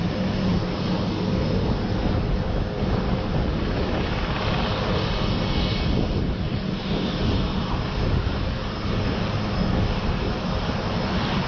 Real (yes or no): yes